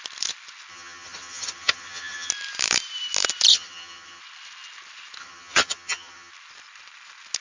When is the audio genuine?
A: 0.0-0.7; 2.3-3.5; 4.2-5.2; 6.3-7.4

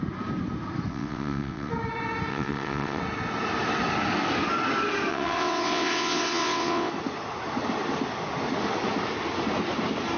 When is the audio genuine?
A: 0.0-0.9; 1.7-2.3; 3.0-5.1; 6.9-10.2

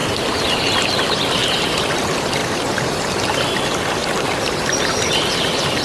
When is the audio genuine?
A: 0.0-1.4; 1.9-2.4; 3.1-4.0; 4.6-5.8

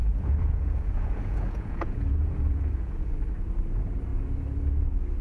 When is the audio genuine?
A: 3.1-5.2